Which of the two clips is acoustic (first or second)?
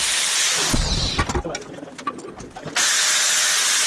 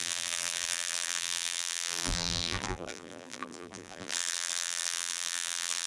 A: first